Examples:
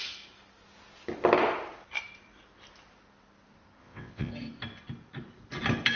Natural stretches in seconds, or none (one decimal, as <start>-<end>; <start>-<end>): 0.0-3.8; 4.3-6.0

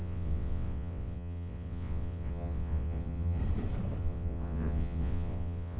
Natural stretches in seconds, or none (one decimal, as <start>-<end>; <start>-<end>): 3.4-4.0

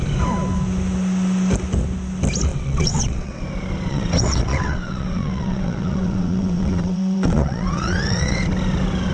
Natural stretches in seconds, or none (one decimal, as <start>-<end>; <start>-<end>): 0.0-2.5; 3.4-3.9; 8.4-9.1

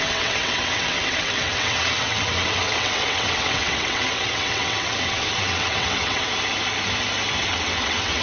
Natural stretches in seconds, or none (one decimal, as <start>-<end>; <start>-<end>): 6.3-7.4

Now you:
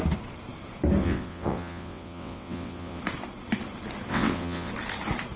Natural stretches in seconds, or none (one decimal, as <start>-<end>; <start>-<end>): 0.0-1.0; 3.0-4.1; 4.7-5.4